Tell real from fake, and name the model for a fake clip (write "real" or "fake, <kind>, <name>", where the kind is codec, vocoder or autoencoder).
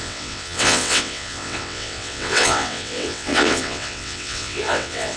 fake, vocoder, WaveNeXt